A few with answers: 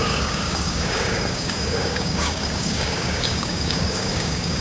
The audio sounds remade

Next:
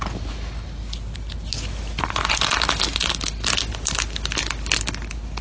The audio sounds recorded